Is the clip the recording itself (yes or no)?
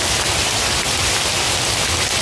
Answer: yes